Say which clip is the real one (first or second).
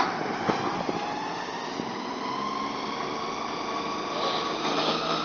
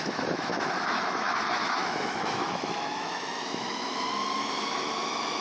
first